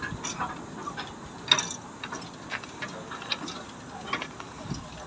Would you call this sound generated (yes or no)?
no